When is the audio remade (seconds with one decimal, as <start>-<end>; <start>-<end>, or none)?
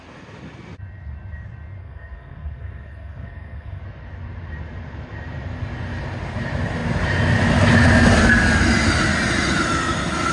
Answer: 1.8-3.8